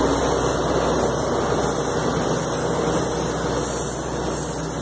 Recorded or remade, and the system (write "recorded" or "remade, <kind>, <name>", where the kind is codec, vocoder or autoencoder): recorded